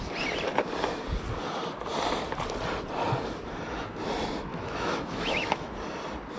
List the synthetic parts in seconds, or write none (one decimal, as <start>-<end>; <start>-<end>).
4.5-5.7